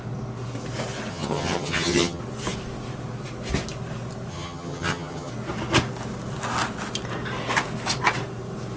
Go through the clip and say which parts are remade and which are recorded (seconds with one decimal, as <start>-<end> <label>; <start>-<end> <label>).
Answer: 0.0-1.1 recorded; 1.1-2.2 remade; 2.2-4.3 recorded; 4.3-5.3 remade; 5.3-8.8 recorded